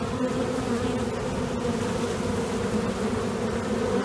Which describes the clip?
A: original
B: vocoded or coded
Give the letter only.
A